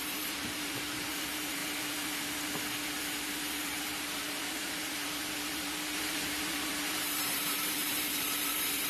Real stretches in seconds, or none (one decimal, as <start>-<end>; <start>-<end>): 1.6-3.6